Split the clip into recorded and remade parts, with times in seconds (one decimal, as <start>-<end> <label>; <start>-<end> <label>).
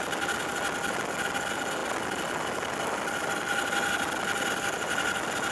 0.0-5.5 recorded